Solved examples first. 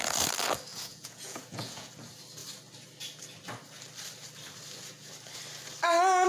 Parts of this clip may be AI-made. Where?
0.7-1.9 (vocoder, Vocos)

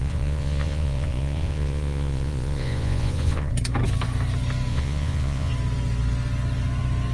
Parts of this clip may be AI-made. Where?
0.0-3.5 (vocoder, Vocos); 4.7-5.5

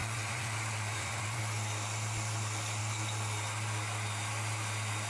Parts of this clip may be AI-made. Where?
0.0-1.4 (vocoder, Vocos)

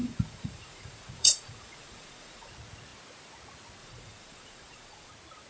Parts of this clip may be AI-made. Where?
0.0-2.5 (vocoder, Vocos); 3.8-5.1

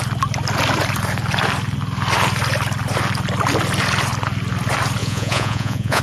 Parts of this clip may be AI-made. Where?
5.0-6.0 (vocoder, Vocos)

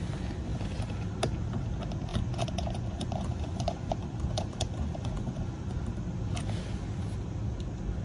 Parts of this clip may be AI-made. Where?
2.1-5.8 (vocoder, Vocos)

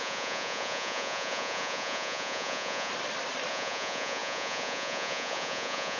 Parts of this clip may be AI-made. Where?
0.0-2.9 (vocoder, Vocos); 3.5-6.0